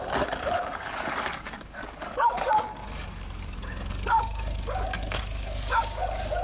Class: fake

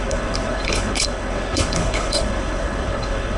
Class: fake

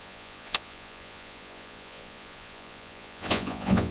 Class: fake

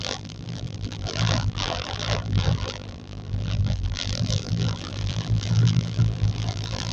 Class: fake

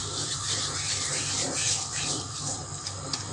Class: real